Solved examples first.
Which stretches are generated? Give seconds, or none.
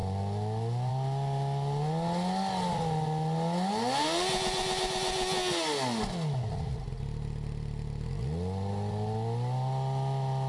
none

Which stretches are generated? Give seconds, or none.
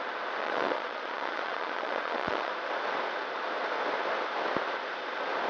0.4-2.5 (vocoder, Vocos)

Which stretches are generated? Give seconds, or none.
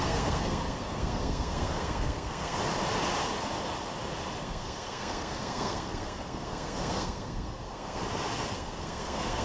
0.0-2.6 (codec, SNAC); 4.4-8.0; 8.5-9.4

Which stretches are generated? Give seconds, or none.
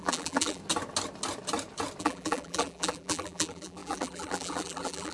0.0-0.6 (vocoder, BigVGAN v2); 2.0-5.1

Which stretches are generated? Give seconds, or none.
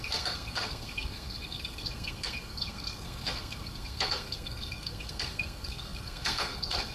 0.0-6.9 (codec, SNAC)